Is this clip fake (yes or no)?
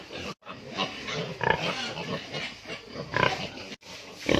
no